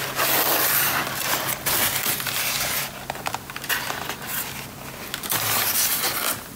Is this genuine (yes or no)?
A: yes